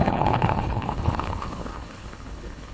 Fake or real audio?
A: fake